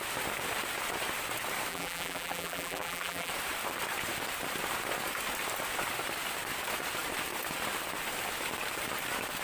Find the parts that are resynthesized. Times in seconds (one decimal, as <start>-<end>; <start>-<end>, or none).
1.7-3.3